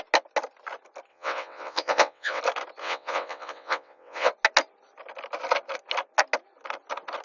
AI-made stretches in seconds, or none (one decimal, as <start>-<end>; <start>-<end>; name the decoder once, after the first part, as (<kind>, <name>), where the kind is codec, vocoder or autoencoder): 1.1-2.4 (vocoder, WaveNeXt); 2.8-4.3